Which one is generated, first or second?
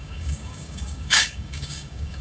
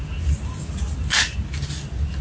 first